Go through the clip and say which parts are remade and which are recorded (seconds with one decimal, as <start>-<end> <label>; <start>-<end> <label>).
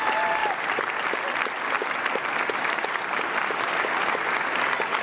0.0-5.0 recorded